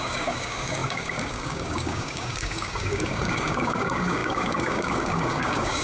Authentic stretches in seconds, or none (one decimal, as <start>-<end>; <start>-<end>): none